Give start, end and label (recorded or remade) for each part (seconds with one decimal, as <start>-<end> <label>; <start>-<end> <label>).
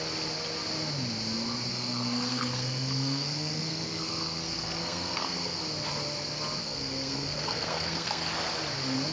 0.0-1.7 recorded; 1.7-5.6 remade; 5.6-6.6 recorded; 6.6-8.3 remade; 8.3-9.1 recorded